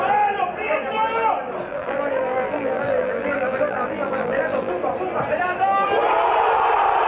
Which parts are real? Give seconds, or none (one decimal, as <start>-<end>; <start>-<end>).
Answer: 0.0-1.7; 4.7-7.1